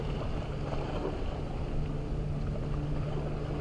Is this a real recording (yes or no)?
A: yes